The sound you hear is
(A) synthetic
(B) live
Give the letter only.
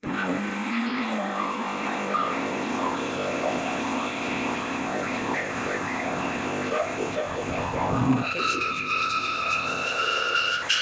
A